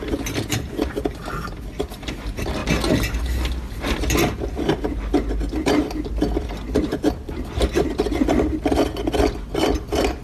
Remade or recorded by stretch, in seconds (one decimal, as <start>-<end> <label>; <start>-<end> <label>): 0.0-10.2 recorded